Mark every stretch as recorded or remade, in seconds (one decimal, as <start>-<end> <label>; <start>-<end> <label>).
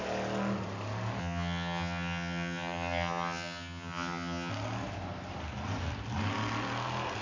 0.0-1.2 recorded; 1.2-4.5 remade; 4.5-7.2 recorded